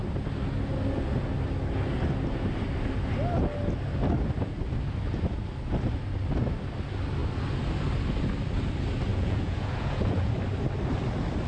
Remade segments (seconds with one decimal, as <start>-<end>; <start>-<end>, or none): 9.1-10.3